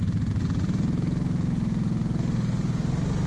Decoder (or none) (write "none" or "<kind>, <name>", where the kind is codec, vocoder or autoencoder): none